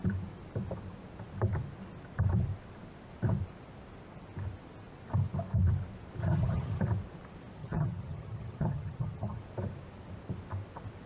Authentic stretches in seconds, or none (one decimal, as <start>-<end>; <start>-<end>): 0.0-6.2; 6.8-7.6; 9.4-11.1